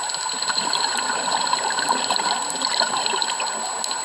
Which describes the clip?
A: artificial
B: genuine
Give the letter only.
B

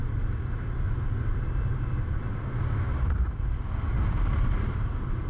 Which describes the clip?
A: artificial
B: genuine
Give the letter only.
B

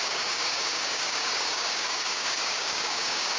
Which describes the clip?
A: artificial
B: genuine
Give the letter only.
A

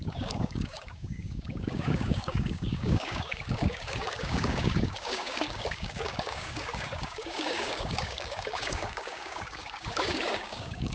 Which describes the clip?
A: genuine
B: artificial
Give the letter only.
B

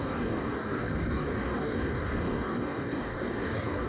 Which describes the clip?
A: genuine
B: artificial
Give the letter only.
B